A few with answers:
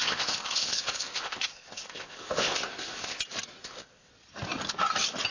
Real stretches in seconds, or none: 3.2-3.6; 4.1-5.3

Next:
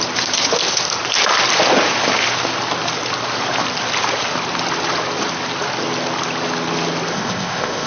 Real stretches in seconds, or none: 0.0-7.1

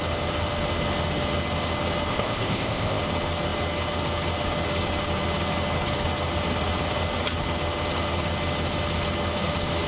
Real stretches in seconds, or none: 0.0-2.1; 3.0-9.9

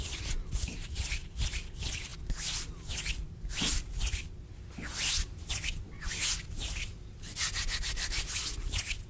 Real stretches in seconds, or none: 0.0-9.1

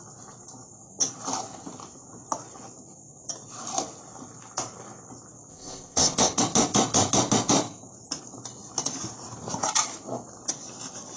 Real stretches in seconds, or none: 0.0-5.5; 6.4-11.2